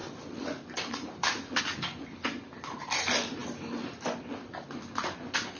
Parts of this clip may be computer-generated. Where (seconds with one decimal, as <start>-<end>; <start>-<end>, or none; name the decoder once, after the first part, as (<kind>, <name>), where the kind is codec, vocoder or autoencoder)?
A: 0.0-1.6 (vocoder, BigVGAN v2); 3.4-4.5